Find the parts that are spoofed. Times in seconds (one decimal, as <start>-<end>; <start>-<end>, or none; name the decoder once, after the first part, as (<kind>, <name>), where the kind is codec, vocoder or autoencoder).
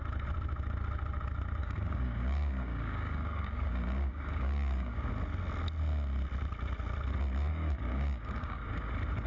1.6-5.1 (codec, DAC); 7.5-8.9